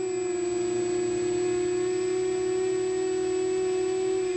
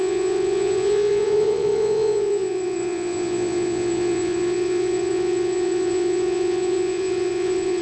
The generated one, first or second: second